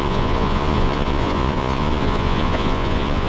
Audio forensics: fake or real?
fake